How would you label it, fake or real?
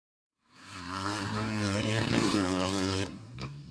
fake